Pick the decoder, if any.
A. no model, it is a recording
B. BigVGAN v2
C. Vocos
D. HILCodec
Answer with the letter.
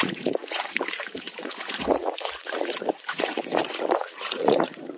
C